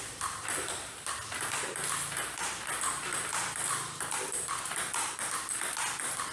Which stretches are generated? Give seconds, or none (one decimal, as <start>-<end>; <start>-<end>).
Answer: 1.2-2.5; 3.3-4.2